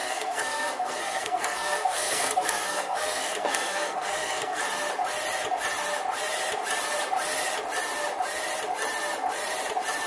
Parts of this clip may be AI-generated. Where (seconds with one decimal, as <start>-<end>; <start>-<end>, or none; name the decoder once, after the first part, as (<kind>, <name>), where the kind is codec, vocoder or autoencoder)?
0.0-4.6 (codec, SNAC)